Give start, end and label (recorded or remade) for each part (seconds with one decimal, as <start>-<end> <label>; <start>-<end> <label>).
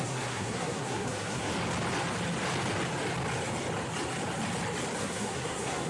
0.0-1.5 remade; 1.5-5.0 recorded; 5.0-5.9 remade